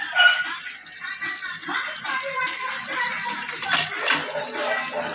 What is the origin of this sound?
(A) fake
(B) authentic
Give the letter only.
A